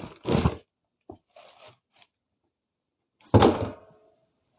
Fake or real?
real